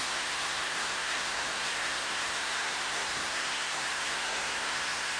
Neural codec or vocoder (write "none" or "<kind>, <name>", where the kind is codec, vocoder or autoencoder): codec, SNAC